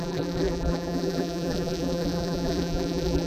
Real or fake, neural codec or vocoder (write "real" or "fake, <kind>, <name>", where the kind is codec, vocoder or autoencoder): fake, vocoder, BigVGAN v2